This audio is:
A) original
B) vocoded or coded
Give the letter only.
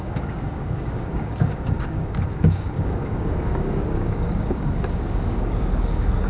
B